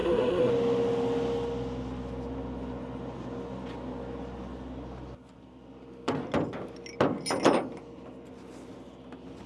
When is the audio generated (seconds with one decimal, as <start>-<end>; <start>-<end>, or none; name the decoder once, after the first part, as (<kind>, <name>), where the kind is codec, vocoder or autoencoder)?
0.0-0.5 (codec, SNAC)